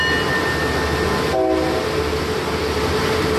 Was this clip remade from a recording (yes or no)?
no